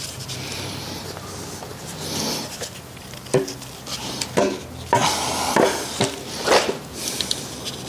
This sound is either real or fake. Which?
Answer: real